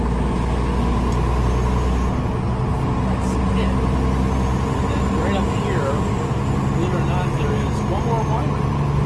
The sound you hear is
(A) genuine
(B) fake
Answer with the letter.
A